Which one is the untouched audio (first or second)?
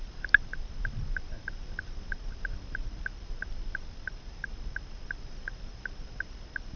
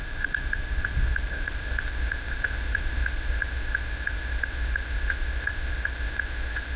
first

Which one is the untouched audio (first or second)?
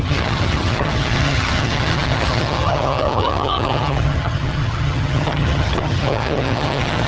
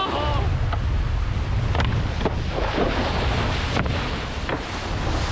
second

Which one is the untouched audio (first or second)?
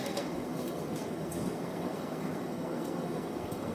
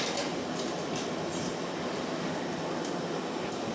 second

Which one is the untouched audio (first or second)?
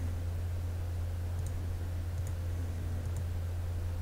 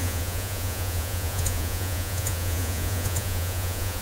first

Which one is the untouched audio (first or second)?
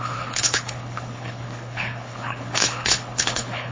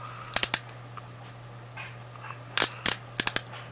second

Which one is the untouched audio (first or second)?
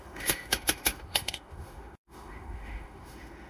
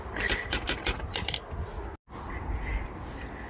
second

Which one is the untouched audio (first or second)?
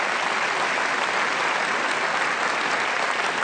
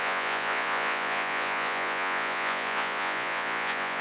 first